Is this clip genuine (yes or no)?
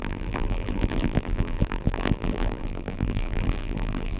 no